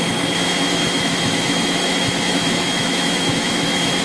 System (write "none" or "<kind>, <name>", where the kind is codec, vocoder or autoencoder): autoencoder, DAC-VAE